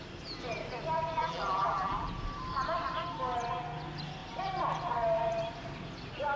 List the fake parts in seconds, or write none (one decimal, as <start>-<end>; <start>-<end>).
1.2-2.1